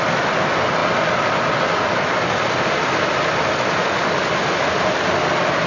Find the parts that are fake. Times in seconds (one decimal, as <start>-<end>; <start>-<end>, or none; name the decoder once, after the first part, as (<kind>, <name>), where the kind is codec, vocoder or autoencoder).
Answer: none